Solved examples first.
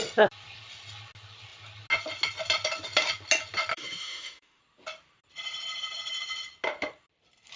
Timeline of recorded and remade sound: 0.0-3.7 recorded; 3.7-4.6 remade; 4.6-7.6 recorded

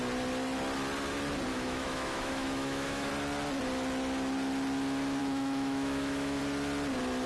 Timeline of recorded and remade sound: 0.0-1.5 recorded; 1.5-3.1 remade; 3.1-5.2 recorded; 5.2-6.4 remade; 6.4-7.3 recorded

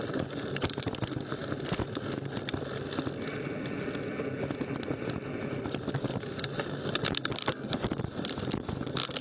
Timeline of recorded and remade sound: 0.0-9.2 recorded